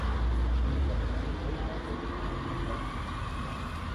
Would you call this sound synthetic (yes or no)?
no